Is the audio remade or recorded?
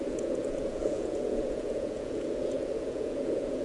remade